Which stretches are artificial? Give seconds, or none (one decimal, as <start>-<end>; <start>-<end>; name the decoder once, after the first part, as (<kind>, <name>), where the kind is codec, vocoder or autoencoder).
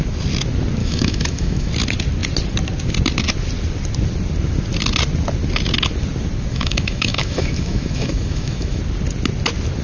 0.8-1.7 (autoencoder, DAC-VAE); 6.5-8.8